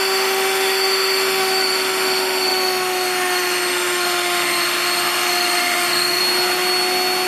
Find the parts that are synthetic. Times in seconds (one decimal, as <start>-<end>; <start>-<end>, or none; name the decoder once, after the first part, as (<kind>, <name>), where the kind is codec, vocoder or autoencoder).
0.0-6.2 (autoencoder, DAC-VAE)